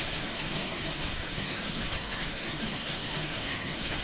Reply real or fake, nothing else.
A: fake